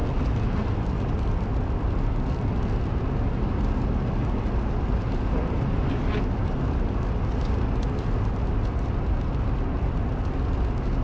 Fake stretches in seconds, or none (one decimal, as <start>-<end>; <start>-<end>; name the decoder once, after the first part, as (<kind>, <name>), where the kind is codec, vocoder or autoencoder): none